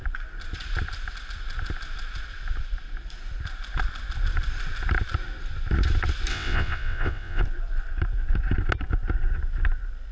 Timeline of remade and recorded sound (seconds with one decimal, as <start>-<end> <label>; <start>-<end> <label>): 0.0-6.3 recorded; 6.3-7.4 remade; 7.4-10.1 recorded